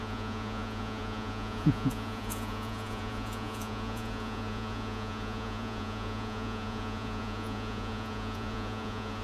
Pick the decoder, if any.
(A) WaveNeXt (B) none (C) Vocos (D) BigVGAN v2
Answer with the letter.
C